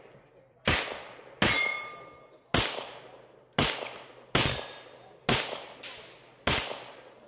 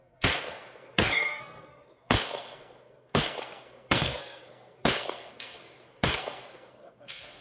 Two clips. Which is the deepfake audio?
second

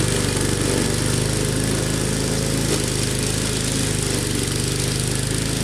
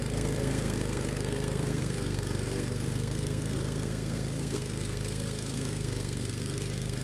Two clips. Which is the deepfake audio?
second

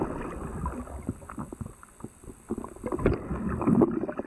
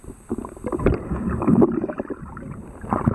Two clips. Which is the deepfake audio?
second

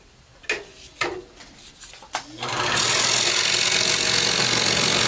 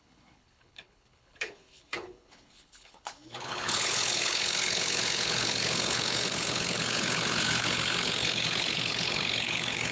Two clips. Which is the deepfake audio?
second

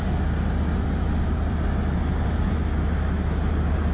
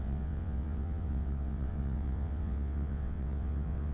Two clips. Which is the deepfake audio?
second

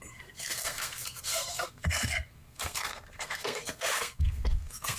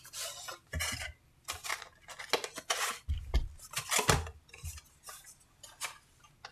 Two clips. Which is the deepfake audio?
first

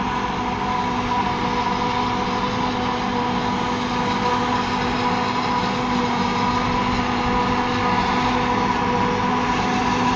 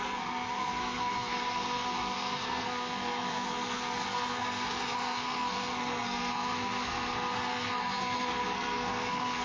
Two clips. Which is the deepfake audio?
second